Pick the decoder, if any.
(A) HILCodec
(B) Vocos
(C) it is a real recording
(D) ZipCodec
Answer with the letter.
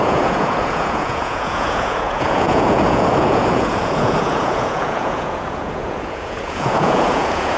B